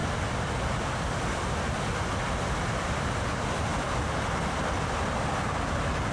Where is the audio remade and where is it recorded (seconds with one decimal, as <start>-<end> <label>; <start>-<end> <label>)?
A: 0.0-6.1 recorded

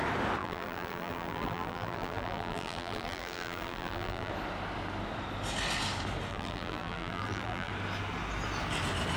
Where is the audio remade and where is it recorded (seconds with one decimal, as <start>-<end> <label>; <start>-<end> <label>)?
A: 0.0-0.4 recorded; 0.4-4.3 remade; 4.3-6.3 recorded; 6.3-7.7 remade; 7.7-9.2 recorded

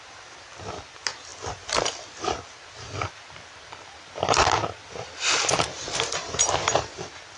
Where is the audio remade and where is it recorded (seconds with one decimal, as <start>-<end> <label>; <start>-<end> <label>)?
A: 0.0-5.7 remade; 5.7-6.4 recorded; 6.4-7.4 remade

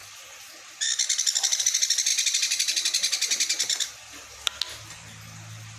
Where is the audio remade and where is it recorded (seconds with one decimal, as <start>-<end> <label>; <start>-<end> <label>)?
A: 0.0-5.8 recorded

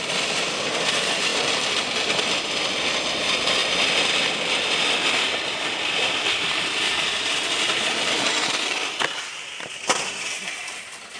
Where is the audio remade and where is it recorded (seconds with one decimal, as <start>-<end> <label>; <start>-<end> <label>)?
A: 0.0-3.6 remade; 3.6-4.6 recorded; 4.6-11.2 remade